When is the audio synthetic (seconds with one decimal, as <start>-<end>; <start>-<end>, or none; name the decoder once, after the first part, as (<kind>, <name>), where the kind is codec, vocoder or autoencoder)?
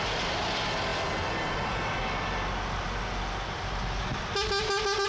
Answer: none